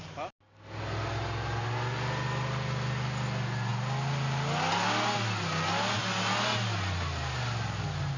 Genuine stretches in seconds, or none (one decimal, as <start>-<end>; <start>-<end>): 0.0-8.2